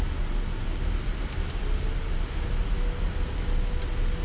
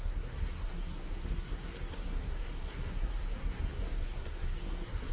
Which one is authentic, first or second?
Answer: first